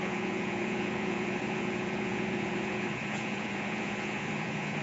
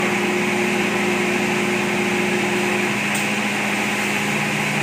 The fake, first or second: first